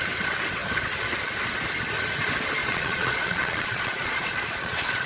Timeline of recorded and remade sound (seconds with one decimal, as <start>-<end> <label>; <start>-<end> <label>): 0.0-2.6 recorded; 2.6-5.1 remade